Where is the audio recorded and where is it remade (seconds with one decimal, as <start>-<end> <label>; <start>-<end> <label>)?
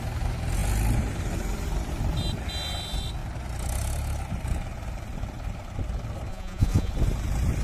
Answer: 0.0-6.3 recorded; 6.3-6.9 remade; 6.9-7.6 recorded